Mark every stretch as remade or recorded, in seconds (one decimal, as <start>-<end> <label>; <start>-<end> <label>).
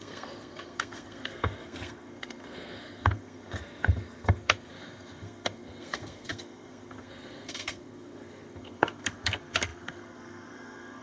0.0-11.0 remade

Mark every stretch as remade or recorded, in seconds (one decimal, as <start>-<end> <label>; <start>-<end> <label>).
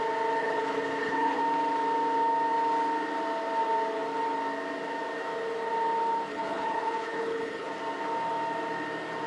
0.0-0.4 recorded; 0.4-1.4 remade; 1.4-6.3 recorded; 6.3-7.7 remade; 7.7-9.3 recorded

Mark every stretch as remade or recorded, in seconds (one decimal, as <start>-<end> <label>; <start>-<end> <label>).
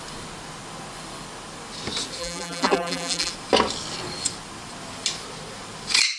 0.0-2.2 recorded; 2.2-3.3 remade; 3.3-6.2 recorded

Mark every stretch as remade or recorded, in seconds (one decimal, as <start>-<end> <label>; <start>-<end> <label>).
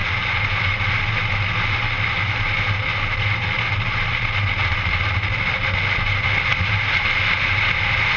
0.0-8.2 recorded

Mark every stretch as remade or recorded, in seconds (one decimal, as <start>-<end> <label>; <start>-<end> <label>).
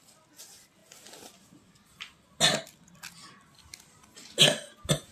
0.0-5.1 recorded